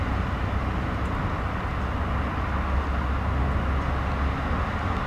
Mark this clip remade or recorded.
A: recorded